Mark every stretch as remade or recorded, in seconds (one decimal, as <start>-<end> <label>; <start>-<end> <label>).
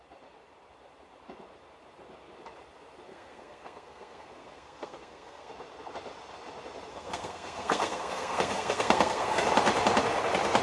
0.0-3.1 recorded; 3.1-5.5 remade; 5.5-6.9 recorded; 6.9-9.4 remade; 9.4-10.6 recorded